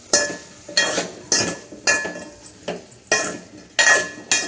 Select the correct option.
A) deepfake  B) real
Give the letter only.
B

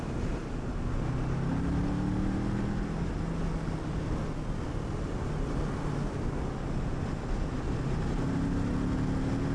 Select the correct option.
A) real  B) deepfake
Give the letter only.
A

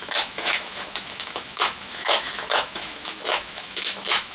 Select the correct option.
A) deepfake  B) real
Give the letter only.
A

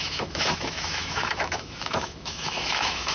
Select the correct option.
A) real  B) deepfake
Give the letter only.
B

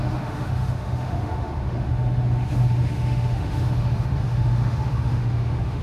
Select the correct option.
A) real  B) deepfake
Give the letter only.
B